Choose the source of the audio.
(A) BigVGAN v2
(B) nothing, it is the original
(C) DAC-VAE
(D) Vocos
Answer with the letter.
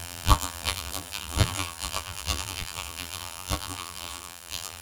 A